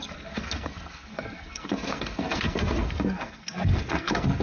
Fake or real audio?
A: fake